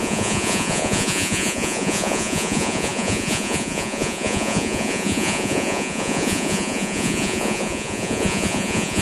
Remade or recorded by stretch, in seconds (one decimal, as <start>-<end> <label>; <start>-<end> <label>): 0.0-9.0 remade